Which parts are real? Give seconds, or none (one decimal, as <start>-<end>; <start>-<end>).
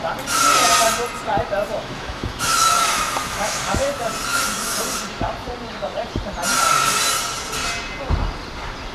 0.0-1.7; 3.9-4.3; 4.8-8.9